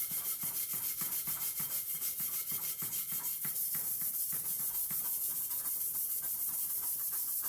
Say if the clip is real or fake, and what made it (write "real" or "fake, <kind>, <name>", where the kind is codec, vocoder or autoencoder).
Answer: fake, vocoder, BigVGAN v2